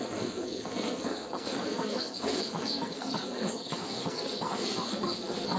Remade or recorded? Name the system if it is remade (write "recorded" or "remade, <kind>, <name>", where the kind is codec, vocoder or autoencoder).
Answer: remade, codec, SNAC